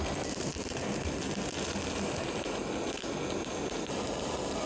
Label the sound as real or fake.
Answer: real